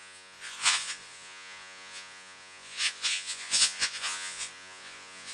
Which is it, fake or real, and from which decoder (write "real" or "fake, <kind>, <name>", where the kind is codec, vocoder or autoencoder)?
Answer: fake, vocoder, Vocos